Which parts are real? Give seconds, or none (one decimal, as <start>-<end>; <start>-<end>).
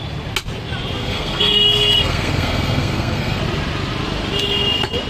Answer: 0.0-1.0; 3.4-5.1